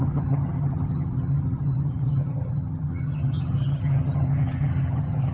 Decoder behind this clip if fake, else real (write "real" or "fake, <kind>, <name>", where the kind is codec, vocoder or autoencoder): fake, vocoder, HiFi-GAN